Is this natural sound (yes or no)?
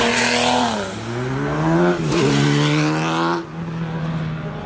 yes